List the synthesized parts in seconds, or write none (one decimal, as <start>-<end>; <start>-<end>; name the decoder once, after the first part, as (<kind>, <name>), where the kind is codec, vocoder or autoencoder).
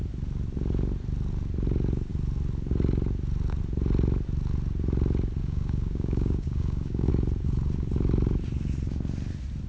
5.4-7.1 (codec, DAC)